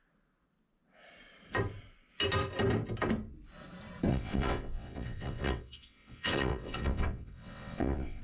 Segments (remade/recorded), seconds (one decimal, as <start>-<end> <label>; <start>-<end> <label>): 0.0-4.1 recorded; 4.1-8.2 remade